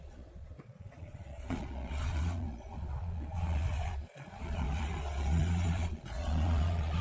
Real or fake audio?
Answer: fake